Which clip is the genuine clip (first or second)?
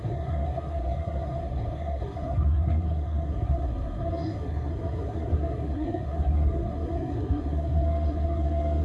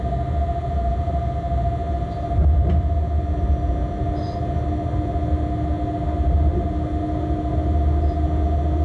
second